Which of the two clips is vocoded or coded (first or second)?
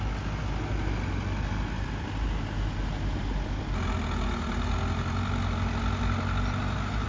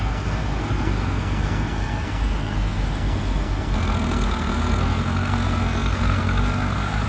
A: second